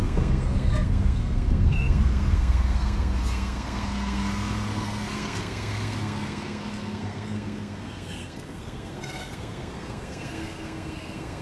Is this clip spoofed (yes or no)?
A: yes